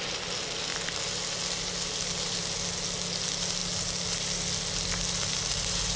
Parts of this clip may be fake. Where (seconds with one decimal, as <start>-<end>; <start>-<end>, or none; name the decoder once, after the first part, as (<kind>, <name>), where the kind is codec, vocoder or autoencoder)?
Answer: none